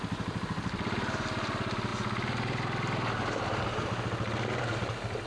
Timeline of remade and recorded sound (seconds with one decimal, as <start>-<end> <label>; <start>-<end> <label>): 0.0-5.3 recorded